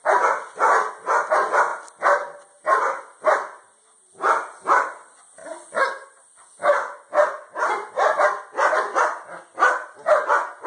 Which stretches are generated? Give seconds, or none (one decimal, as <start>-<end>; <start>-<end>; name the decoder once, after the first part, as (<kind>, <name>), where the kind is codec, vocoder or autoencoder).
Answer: none